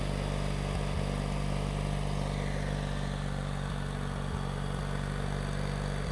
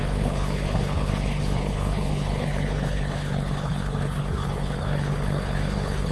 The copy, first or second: second